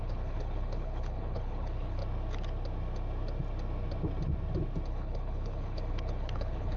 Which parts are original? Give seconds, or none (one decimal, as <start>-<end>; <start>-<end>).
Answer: 2.0-4.9